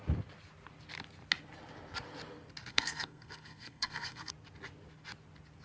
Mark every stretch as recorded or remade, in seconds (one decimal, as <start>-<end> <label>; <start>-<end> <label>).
0.0-2.7 recorded; 2.7-4.3 remade; 4.3-5.6 recorded